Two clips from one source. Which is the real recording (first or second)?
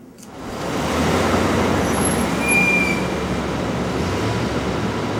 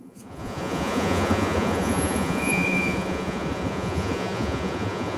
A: first